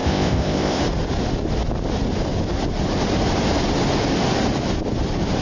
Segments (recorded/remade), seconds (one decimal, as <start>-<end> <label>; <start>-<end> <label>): 0.0-0.8 remade; 0.8-5.4 recorded